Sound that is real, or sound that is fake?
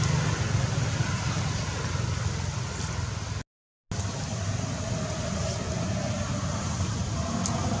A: real